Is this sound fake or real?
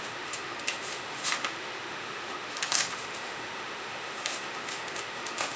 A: fake